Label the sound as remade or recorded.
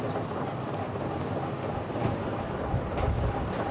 recorded